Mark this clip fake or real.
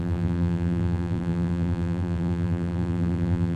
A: fake